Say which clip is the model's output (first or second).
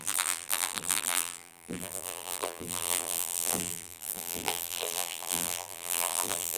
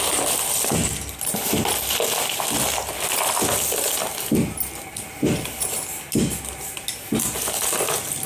first